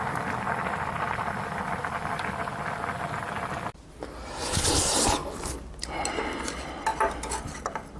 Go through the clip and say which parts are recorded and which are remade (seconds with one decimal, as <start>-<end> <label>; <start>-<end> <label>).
0.0-8.0 recorded